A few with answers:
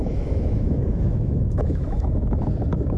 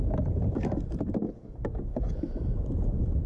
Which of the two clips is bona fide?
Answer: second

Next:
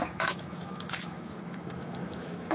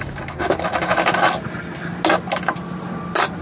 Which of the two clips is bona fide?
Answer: second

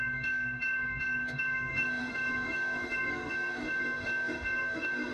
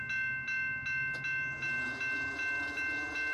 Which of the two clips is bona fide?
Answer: second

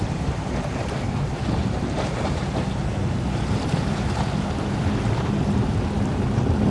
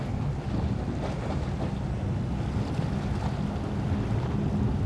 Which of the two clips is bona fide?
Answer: second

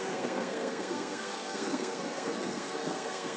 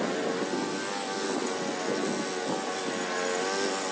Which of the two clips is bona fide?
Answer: second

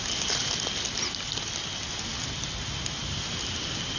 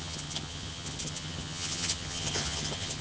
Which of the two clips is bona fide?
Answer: first